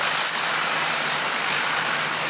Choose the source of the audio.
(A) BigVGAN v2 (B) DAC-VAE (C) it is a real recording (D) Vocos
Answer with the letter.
A